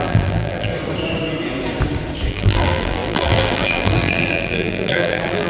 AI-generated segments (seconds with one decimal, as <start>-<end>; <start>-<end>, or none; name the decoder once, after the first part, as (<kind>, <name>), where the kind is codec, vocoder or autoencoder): 0.0-0.7 (vocoder, BigVGAN v2); 2.3-5.5